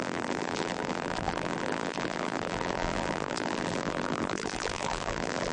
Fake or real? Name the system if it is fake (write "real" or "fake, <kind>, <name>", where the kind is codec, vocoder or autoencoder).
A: fake, vocoder, BigVGAN v2